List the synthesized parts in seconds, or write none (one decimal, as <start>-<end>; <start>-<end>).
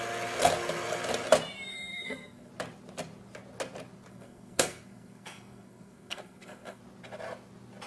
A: 1.7-2.5; 4.1-6.8